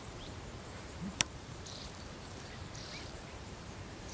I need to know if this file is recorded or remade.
remade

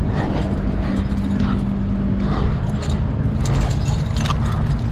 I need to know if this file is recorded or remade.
recorded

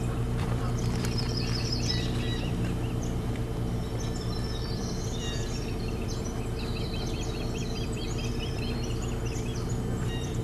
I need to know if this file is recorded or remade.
remade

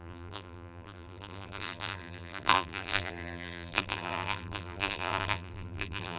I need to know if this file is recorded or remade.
remade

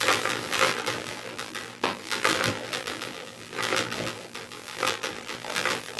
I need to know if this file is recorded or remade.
remade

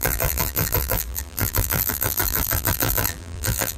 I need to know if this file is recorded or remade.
remade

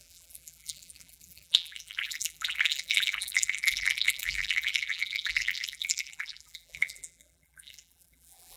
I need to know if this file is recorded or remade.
remade